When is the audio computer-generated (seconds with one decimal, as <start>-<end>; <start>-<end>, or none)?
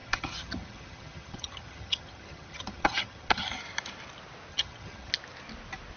0.0-3.6; 4.5-5.1